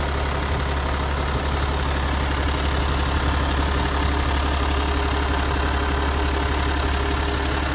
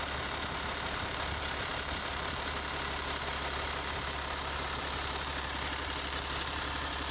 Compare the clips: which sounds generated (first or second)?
second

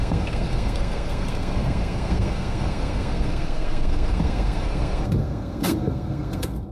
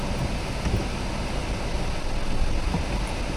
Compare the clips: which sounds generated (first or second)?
first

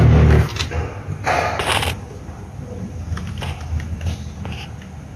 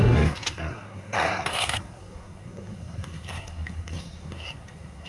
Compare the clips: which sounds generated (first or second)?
second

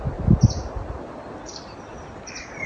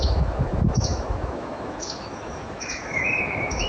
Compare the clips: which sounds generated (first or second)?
second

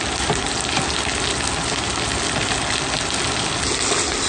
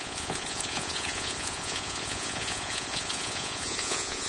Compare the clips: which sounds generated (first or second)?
second